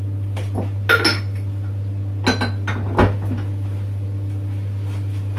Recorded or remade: recorded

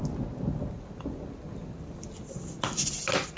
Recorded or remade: recorded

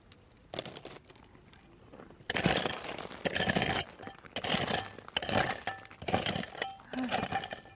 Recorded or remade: recorded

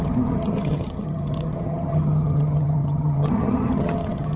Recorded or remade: remade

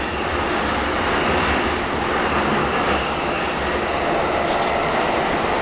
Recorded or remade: recorded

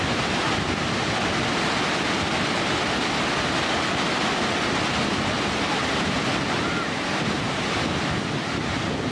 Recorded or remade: recorded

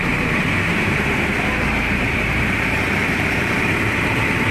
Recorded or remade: remade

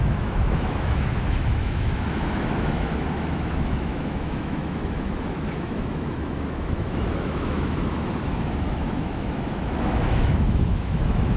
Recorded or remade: remade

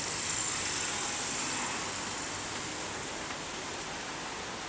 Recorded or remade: recorded